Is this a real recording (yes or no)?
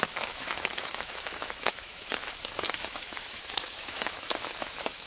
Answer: no